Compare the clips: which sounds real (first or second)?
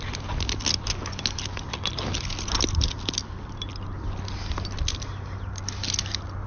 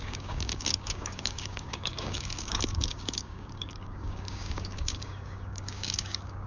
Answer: first